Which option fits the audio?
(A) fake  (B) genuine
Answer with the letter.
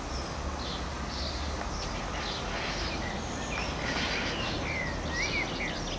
B